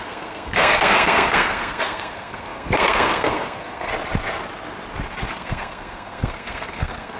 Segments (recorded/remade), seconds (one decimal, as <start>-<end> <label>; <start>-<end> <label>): 0.0-3.9 remade; 3.9-5.3 recorded; 5.3-7.2 remade